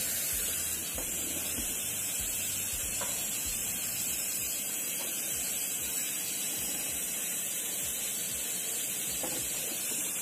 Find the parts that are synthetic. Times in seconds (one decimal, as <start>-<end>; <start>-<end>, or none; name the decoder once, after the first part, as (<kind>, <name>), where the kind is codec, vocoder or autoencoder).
0.0-8.1 (vocoder, BigVGAN v2); 8.8-10.2